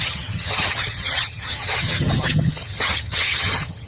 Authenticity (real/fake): fake